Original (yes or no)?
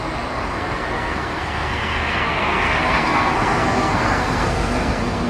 no